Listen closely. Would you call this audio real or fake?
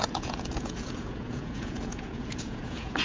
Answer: fake